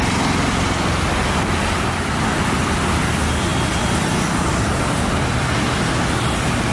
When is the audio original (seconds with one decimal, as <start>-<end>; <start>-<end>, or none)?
0.0-6.7